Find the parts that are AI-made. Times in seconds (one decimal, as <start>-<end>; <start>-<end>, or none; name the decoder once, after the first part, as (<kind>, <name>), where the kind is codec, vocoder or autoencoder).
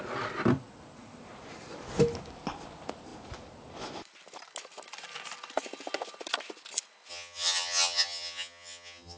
7.1-9.2 (vocoder, HiFi-GAN)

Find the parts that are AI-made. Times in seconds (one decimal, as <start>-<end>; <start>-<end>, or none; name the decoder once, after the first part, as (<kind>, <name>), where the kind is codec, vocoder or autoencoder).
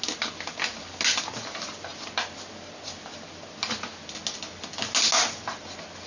none